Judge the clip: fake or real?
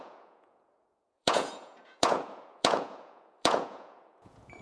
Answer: fake